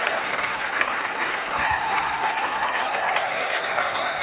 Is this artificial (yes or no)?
yes